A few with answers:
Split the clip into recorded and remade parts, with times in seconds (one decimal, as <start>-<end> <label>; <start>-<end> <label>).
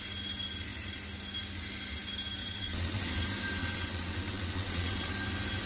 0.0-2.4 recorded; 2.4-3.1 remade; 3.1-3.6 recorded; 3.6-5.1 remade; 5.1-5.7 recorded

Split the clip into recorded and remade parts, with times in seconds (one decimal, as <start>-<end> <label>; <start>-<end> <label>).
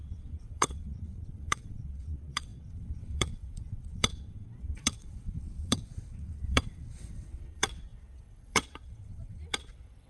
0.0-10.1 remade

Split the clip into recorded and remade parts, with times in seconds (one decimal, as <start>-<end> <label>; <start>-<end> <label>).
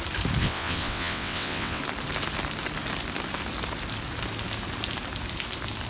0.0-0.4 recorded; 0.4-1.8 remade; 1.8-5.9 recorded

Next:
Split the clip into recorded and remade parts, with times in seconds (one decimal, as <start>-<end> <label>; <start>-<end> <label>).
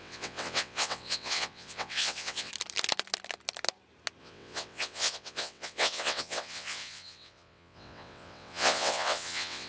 0.0-2.5 remade; 2.5-4.2 recorded; 4.2-9.7 remade